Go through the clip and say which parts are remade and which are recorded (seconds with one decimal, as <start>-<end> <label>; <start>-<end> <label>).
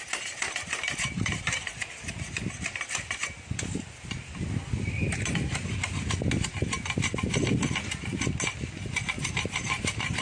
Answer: 0.0-4.3 remade; 4.3-9.2 recorded; 9.2-10.2 remade